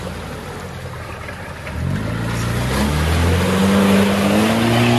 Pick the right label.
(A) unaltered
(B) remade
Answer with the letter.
A